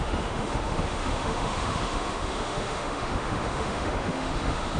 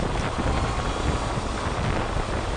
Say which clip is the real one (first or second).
second